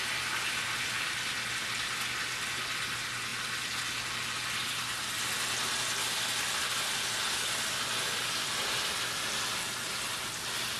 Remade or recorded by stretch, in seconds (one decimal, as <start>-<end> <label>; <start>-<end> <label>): 0.0-10.8 recorded